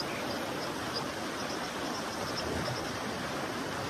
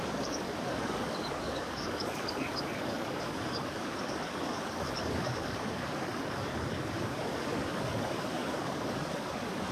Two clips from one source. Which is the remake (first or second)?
second